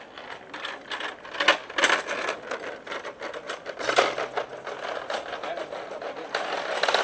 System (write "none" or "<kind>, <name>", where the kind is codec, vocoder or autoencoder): none